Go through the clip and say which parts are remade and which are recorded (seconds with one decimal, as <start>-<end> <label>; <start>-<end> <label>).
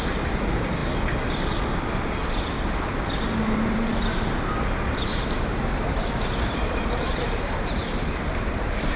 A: 0.0-0.8 remade; 0.8-3.4 recorded; 3.4-9.0 remade